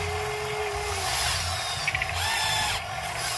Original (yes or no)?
yes